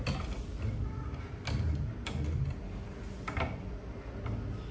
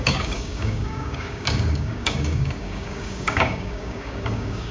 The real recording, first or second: first